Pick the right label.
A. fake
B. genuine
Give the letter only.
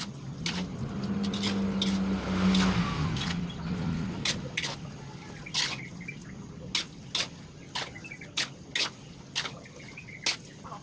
B